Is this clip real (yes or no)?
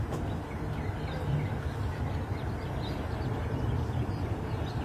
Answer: no